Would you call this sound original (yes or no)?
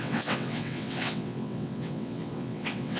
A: no